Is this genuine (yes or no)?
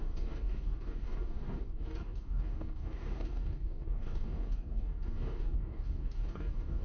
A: no